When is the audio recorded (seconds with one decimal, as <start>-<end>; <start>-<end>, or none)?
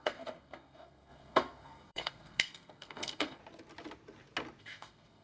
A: 3.4-4.6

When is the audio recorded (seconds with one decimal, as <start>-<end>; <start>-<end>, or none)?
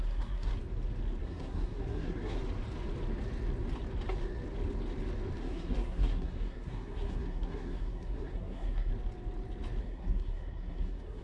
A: 0.5-1.2; 2.4-5.4; 8.9-9.8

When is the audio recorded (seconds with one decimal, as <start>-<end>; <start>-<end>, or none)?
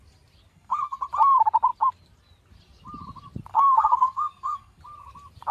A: 0.0-0.5; 1.0-3.5; 4.8-5.5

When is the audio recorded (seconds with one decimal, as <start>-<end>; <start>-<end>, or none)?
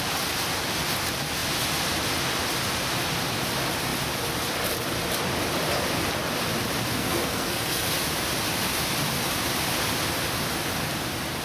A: 0.0-7.0; 7.8-11.4